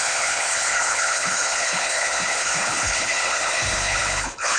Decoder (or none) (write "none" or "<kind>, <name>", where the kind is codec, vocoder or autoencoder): codec, HILCodec